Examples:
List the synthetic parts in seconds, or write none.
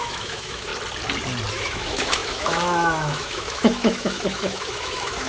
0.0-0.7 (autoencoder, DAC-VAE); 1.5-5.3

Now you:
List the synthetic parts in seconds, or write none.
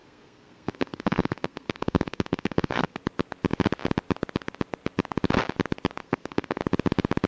0.0-3.0 (codec, SNAC); 6.0-6.6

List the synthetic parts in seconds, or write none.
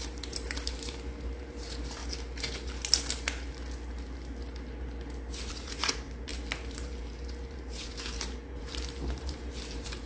0.0-2.0 (vocoder, BigVGAN v2); 5.5-10.1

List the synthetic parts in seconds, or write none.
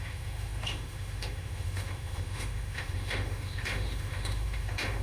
0.0-5.0 (autoencoder, DAC-VAE)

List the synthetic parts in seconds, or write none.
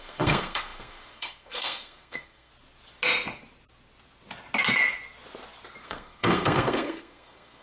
0.0-2.5 (codec, SNAC); 5.8-7.6